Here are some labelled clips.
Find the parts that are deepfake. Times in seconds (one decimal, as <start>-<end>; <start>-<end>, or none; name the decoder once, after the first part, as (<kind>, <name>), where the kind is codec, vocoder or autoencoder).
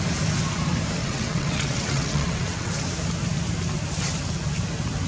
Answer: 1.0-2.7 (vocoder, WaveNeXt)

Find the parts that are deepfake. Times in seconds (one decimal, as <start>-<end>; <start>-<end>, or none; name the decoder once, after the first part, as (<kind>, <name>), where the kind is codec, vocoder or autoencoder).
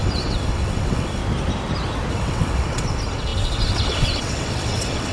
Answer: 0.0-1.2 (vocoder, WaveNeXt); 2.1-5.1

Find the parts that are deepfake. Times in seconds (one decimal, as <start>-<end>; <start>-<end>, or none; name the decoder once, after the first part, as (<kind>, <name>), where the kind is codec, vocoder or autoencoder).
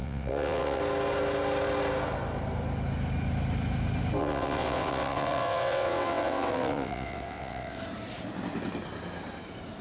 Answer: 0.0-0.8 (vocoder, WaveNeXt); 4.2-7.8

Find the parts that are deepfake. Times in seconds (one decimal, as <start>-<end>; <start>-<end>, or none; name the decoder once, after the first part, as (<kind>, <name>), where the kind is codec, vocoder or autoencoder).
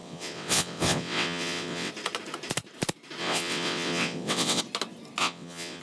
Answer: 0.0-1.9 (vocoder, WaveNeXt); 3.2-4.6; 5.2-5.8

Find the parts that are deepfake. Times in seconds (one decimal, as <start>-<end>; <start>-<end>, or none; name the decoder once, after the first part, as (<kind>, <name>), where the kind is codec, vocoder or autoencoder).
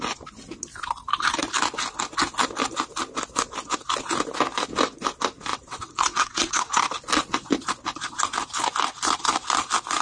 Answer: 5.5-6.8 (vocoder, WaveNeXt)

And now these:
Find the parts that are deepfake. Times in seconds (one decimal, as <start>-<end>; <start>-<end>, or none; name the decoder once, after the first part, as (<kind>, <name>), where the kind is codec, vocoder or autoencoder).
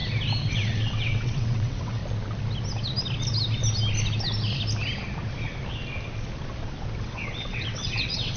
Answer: 0.5-2.0 (vocoder, WaveNeXt); 7.0-8.4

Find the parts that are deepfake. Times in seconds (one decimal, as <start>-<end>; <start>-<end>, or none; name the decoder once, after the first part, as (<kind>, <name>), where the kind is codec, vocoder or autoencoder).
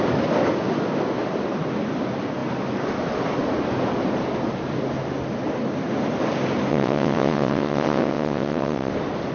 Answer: 6.7-8.9 (vocoder, WaveNeXt)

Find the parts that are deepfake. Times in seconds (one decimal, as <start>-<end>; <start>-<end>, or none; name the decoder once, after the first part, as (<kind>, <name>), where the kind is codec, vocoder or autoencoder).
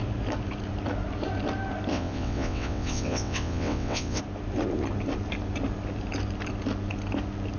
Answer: 1.9-4.2 (vocoder, WaveNeXt)